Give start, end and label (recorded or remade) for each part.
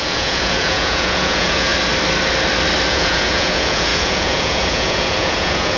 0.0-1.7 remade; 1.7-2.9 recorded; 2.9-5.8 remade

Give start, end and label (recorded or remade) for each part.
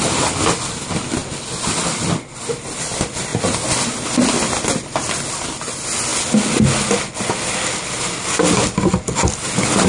0.0-9.9 recorded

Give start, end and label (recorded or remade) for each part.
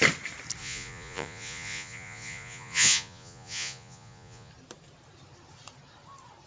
0.0-0.6 recorded; 0.6-4.5 remade; 4.5-6.5 recorded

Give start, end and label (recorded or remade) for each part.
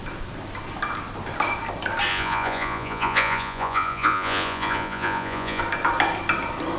0.0-2.1 recorded; 2.1-5.6 remade; 5.6-6.8 recorded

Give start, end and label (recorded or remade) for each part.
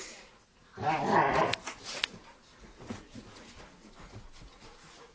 0.0-0.7 remade; 0.7-1.8 recorded; 1.8-5.1 remade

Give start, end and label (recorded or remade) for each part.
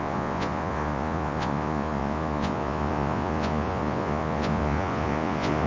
0.0-5.7 remade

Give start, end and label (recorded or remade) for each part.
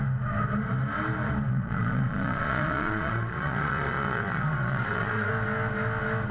0.0-1.5 recorded; 1.5-5.3 remade; 5.3-6.3 recorded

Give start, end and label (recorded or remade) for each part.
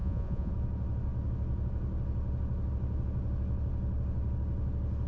0.0-0.5 remade; 0.5-5.1 recorded